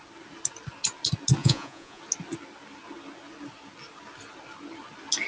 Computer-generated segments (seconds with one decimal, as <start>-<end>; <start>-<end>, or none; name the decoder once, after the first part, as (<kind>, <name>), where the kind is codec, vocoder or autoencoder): 1.4-2.0 (vocoder, Vocos)